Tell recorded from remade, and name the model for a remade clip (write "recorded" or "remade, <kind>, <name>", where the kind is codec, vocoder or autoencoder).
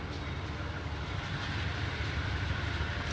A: recorded